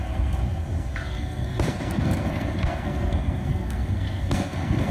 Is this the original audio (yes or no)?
no